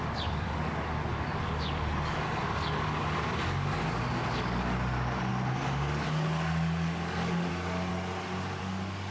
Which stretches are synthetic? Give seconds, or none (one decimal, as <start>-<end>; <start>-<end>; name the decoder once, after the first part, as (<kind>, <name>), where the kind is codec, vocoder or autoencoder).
0.0-7.9 (codec, DAC); 8.6-9.1